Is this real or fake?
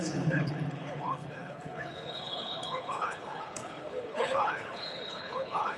fake